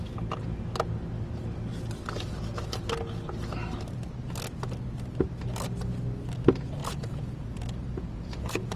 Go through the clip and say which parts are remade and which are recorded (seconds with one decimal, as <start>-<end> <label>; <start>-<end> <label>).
0.0-6.8 recorded; 6.8-8.8 remade